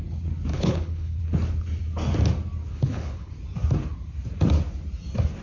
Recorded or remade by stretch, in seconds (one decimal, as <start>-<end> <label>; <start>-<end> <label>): 0.0-0.5 recorded; 0.5-1.2 remade; 1.2-2.7 recorded; 2.7-3.3 remade; 3.3-5.4 recorded